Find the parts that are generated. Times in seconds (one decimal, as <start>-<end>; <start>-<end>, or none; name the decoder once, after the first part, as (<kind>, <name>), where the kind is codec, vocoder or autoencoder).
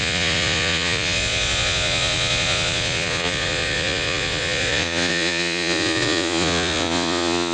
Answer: 0.0-7.5 (vocoder, Vocos)